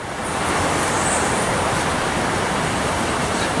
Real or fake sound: fake